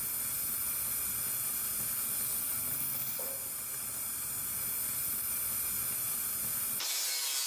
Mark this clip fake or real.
real